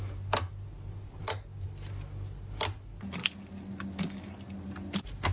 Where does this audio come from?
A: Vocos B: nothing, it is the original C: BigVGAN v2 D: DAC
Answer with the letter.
B